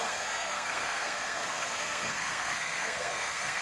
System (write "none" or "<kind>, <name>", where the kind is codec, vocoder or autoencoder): codec, SNAC